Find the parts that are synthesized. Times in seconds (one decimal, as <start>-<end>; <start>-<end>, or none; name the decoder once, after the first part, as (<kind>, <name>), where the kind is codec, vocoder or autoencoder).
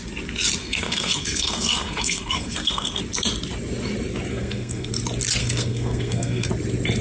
0.6-3.0 (codec, SNAC); 4.3-4.9; 5.4-6.5